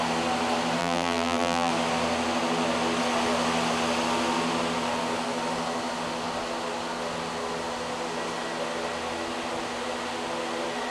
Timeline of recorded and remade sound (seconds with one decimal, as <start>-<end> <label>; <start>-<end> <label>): 0.0-0.8 recorded; 0.8-1.7 remade; 1.7-10.9 recorded